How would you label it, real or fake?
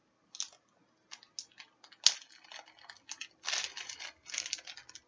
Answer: real